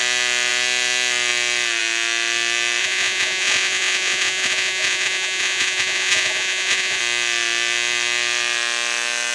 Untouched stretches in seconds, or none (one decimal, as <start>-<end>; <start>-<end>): 0.0-2.8; 7.0-9.3